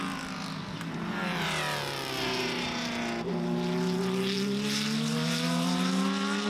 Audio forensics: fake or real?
real